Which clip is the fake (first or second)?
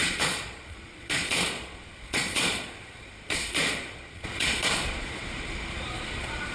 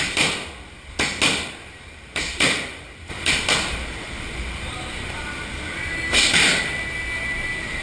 first